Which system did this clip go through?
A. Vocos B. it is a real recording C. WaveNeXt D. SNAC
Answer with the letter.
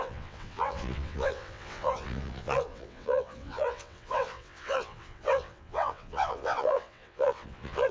C